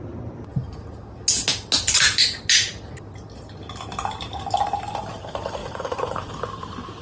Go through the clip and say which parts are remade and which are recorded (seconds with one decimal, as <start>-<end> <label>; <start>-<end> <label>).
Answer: 0.0-5.6 recorded; 5.6-6.3 remade; 6.3-7.0 recorded